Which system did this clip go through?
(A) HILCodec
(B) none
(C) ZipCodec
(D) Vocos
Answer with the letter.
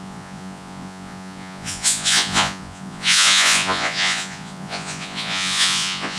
D